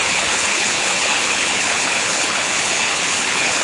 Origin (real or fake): fake